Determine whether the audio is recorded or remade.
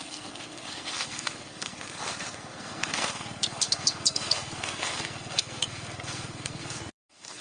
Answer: remade